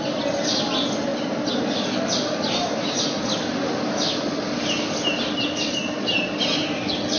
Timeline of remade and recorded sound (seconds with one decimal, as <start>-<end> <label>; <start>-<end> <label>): 0.0-7.2 recorded